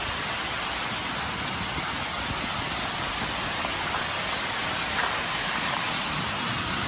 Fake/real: real